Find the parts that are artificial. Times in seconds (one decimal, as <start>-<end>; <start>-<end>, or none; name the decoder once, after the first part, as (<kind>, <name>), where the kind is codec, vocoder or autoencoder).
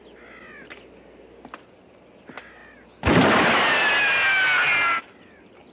none